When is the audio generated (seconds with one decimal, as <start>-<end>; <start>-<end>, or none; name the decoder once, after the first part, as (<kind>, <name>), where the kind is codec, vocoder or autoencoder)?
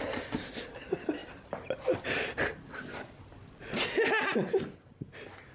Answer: none